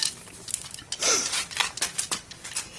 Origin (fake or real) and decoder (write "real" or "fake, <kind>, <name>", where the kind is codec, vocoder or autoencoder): real